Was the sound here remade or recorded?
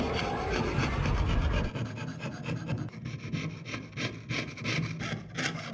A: recorded